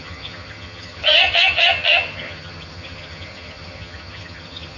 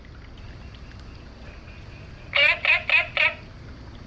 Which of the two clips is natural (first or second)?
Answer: second